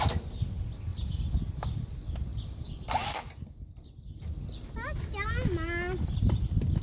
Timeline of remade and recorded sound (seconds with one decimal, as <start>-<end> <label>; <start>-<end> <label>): 0.0-6.8 recorded